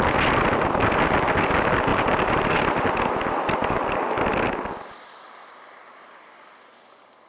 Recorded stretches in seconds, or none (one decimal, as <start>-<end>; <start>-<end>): 0.0-1.9; 2.9-7.3

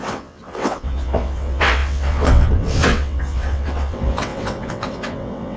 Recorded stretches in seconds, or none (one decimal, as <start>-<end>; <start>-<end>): none